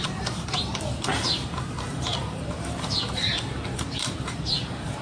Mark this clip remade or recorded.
remade